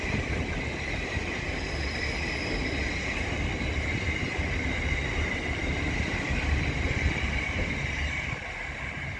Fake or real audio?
real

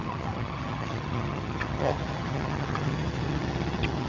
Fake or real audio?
fake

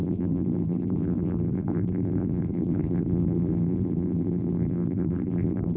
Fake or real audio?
fake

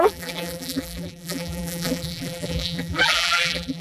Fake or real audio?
fake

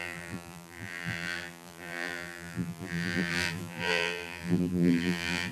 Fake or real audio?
fake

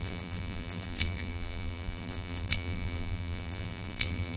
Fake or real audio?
fake